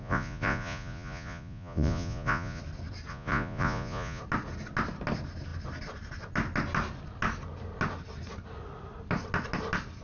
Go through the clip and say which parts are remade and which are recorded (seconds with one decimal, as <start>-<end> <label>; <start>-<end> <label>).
0.0-2.6 remade; 2.6-3.1 recorded; 3.1-4.2 remade; 4.2-10.0 recorded

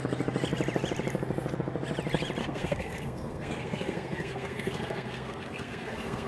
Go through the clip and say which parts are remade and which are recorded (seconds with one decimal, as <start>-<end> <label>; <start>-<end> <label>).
0.0-2.4 recorded; 2.4-6.3 remade

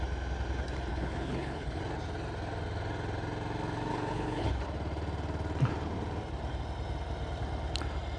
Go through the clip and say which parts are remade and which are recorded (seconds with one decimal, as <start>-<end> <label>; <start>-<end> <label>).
0.0-0.9 recorded; 0.9-1.8 remade; 1.8-3.9 recorded; 3.9-4.5 remade; 4.5-8.2 recorded

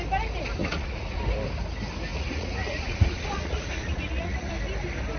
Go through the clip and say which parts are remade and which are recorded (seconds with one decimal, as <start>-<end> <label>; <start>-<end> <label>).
0.0-0.6 recorded; 0.6-1.2 remade; 1.2-2.1 recorded; 2.1-4.5 remade; 4.5-5.2 recorded